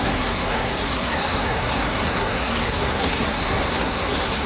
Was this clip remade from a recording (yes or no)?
yes